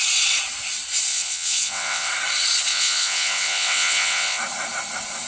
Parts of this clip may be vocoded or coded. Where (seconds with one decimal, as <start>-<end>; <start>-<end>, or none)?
1.1-2.1; 2.7-4.4